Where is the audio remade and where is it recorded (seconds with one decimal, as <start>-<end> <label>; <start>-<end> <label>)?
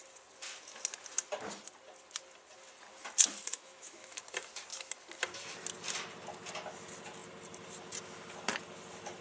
0.0-3.5 recorded; 3.5-4.2 remade; 4.2-9.2 recorded